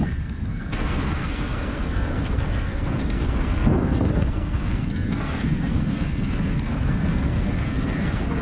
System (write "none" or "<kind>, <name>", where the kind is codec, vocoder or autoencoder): codec, SNAC